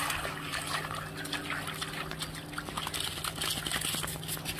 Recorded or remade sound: recorded